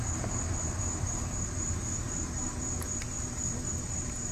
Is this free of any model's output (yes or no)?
no